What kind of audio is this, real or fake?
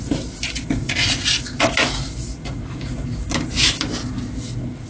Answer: real